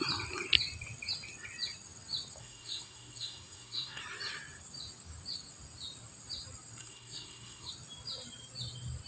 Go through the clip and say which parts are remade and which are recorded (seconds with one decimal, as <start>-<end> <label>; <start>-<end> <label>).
0.0-2.4 recorded; 2.4-4.0 remade; 4.0-6.8 recorded; 6.8-7.7 remade; 7.7-9.1 recorded